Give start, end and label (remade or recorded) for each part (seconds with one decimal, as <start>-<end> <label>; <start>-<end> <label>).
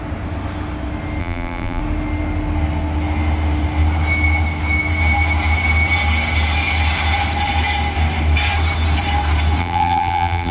0.0-1.2 recorded; 1.2-1.8 remade; 1.8-9.6 recorded; 9.6-10.5 remade